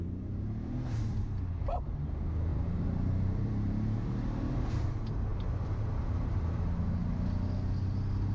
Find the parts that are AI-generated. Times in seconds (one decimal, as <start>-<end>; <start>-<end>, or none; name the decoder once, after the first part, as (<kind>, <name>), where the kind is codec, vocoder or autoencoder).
2.5-4.8 (vocoder, BigVGAN v2)